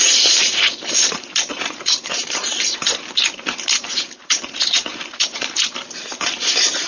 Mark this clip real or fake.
fake